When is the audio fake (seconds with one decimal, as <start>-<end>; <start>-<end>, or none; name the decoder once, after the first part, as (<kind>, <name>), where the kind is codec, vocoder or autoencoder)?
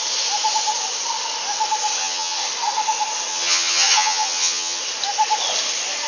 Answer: 2.0-2.5 (vocoder, HiFi-GAN); 3.3-4.8